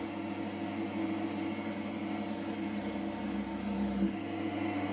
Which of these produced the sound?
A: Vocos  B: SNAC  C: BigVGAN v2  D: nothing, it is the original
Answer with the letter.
D